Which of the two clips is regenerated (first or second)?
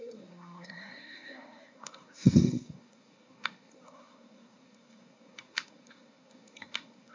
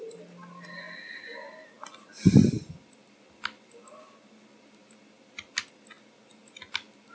first